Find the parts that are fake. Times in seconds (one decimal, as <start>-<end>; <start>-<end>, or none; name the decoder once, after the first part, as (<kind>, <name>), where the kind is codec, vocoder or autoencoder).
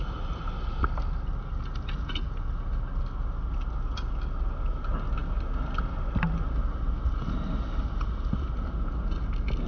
none